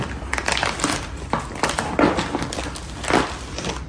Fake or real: real